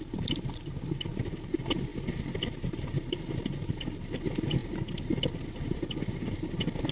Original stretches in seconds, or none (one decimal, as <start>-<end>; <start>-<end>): 0.0-6.9